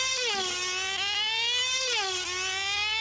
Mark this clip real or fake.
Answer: real